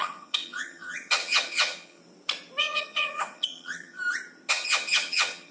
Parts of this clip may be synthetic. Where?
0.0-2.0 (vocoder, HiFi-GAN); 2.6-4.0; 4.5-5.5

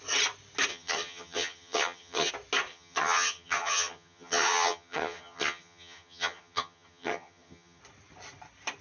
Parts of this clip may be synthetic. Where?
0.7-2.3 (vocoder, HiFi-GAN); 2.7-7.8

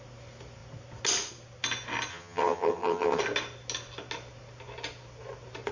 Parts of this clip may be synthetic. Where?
2.1-3.2 (vocoder, HiFi-GAN)